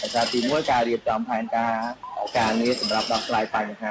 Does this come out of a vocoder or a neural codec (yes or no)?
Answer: no